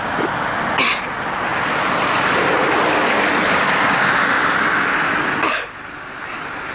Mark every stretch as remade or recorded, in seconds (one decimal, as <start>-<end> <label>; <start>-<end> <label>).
0.0-1.5 recorded; 1.5-2.4 remade; 2.4-6.7 recorded